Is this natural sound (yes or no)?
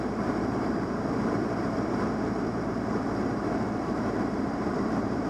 no